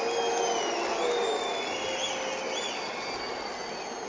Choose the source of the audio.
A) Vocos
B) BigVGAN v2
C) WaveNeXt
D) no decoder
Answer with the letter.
D